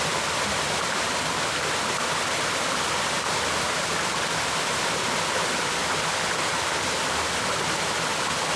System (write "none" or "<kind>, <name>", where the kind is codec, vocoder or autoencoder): none